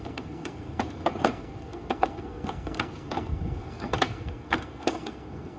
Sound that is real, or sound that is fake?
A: fake